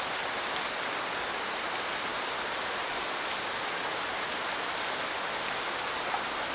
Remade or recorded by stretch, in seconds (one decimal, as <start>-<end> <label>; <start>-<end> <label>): 0.0-2.1 recorded; 2.1-4.5 remade; 4.5-6.5 recorded